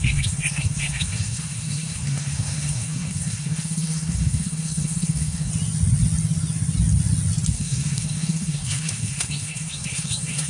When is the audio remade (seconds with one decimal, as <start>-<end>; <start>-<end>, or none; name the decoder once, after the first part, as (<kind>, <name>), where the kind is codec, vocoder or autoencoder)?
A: 0.0-5.5 (codec, SNAC); 7.5-10.5